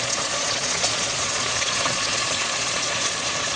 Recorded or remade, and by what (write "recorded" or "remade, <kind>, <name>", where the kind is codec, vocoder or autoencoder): remade, vocoder, Vocos